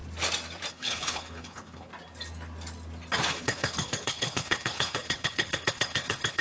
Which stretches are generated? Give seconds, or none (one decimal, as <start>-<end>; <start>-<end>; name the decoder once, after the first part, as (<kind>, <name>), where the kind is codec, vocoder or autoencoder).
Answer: 0.7-1.9 (codec, HILCodec); 3.3-6.4